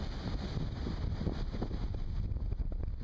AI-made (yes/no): no